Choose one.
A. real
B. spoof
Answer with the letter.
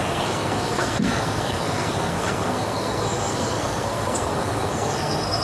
B